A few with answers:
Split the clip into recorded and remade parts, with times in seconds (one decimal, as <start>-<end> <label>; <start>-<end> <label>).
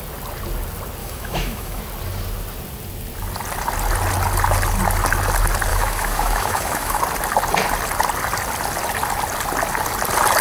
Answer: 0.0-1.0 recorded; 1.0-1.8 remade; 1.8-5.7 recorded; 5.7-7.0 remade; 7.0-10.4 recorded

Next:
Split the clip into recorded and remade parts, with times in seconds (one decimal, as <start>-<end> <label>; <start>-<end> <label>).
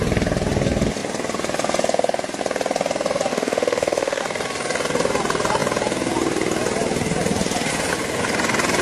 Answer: 0.0-3.3 recorded; 3.3-4.2 remade; 4.2-8.8 recorded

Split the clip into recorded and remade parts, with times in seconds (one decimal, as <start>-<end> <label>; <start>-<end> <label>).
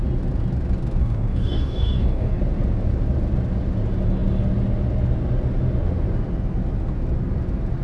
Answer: 0.0-1.0 recorded; 1.0-2.4 remade; 2.4-7.8 recorded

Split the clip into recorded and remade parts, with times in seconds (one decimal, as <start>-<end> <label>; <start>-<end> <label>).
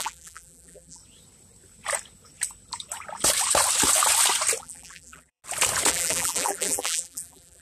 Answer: 0.0-1.0 remade; 1.0-4.6 recorded; 4.6-5.4 remade; 5.4-5.9 recorded; 5.9-7.6 remade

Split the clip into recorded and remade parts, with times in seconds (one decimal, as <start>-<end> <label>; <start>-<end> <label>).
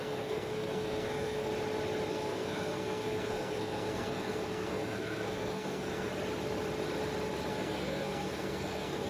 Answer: 0.0-1.5 remade; 1.5-2.1 recorded; 2.1-6.1 remade; 6.1-7.5 recorded; 7.5-9.1 remade